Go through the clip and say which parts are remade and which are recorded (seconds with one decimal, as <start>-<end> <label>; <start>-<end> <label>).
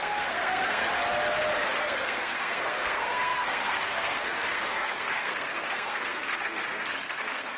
0.0-0.8 remade; 0.8-1.8 recorded; 1.8-7.6 remade